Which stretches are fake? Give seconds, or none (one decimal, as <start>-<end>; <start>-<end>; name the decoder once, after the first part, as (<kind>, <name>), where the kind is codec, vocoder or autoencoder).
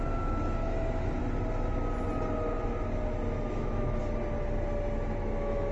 0.0-1.2 (autoencoder, DAC-VAE); 3.5-4.0; 5.2-5.7